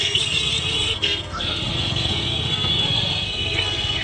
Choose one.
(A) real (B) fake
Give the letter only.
B